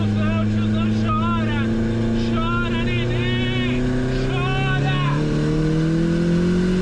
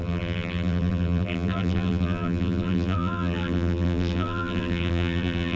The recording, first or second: first